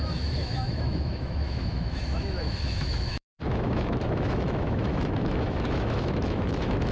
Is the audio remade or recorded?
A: remade